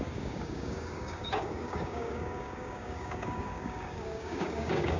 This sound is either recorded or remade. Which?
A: remade